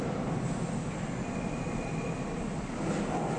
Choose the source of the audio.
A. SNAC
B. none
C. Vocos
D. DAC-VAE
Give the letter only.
B